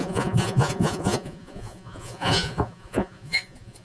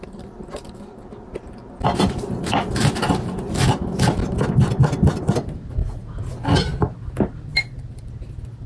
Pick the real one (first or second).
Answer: second